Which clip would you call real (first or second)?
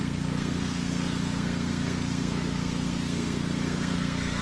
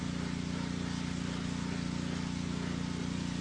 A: second